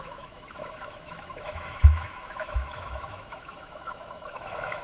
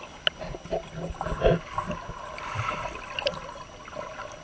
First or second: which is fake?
first